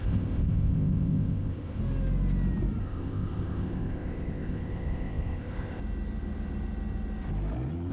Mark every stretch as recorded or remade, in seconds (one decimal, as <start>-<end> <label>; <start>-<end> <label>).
0.0-1.8 remade; 1.8-2.8 recorded; 2.8-5.8 remade; 5.8-7.9 recorded